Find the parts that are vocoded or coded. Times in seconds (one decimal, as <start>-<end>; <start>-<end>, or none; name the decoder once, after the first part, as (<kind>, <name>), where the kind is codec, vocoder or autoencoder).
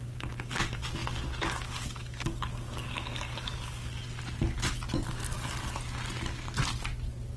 0.0-4.0 (codec, DAC)